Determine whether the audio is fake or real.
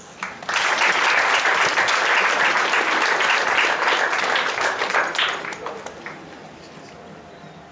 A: real